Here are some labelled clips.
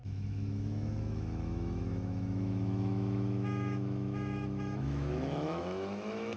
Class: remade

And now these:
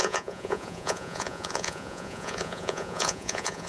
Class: remade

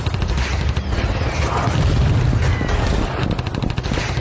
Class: recorded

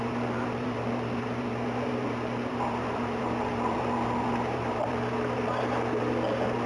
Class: remade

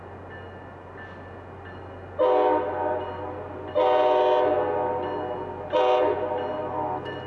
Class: recorded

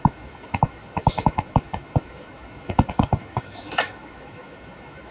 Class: remade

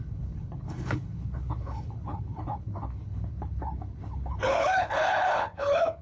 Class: remade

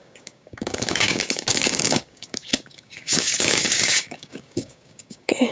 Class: remade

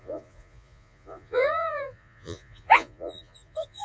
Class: remade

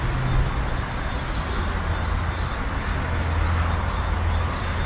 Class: recorded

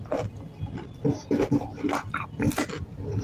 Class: recorded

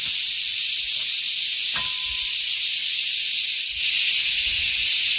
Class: recorded